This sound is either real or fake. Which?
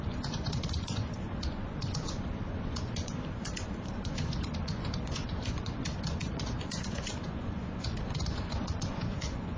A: fake